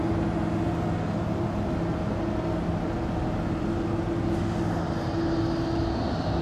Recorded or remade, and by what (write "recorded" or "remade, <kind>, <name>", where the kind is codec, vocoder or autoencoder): recorded